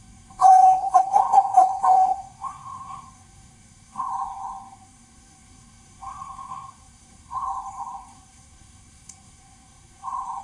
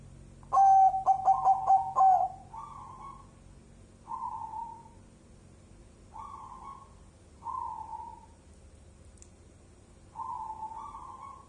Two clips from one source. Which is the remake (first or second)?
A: first